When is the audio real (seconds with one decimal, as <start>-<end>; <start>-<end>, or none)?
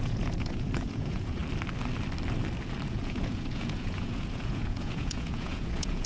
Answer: 1.4-2.9